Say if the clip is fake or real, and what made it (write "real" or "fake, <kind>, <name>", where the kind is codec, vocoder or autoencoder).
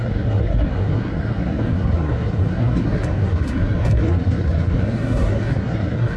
fake, codec, SNAC